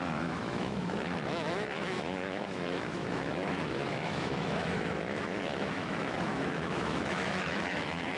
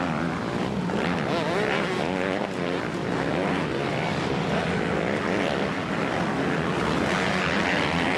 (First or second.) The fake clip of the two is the first